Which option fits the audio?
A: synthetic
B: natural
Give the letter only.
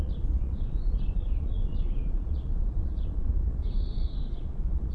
A